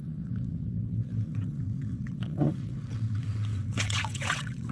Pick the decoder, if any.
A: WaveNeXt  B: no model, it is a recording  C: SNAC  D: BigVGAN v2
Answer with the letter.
A